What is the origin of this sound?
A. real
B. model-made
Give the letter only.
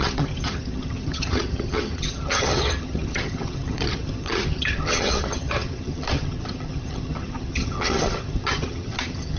B